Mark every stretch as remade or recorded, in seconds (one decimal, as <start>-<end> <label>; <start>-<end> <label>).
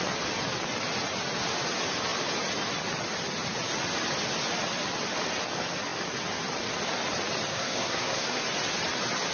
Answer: 0.0-7.5 recorded; 7.5-8.4 remade; 8.4-9.3 recorded